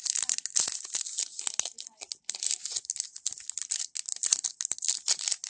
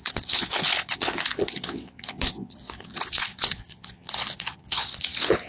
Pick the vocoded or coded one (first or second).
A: second